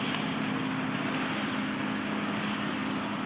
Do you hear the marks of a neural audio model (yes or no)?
no